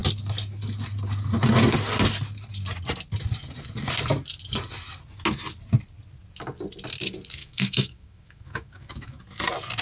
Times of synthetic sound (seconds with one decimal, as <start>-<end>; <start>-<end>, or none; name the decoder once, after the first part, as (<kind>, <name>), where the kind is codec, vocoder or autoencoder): 7.4-9.2 (autoencoder, DAC-VAE)